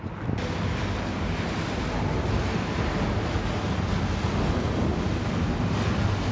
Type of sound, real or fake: real